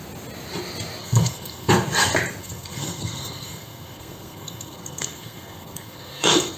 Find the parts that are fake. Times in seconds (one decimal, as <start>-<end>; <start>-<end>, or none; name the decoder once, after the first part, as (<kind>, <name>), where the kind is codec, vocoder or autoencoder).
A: 1.0-1.7 (codec, SNAC); 2.4-6.6